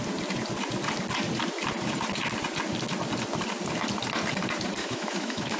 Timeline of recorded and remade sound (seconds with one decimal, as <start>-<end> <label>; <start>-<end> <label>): 0.0-4.8 recorded; 4.8-5.6 remade